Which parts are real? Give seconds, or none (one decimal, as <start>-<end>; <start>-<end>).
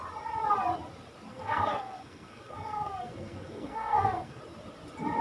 0.0-1.3; 4.4-5.2